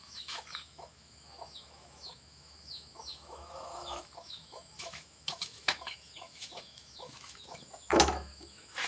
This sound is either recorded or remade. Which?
remade